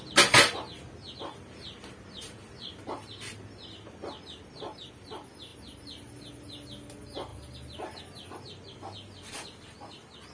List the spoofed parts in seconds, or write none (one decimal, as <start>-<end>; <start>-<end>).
none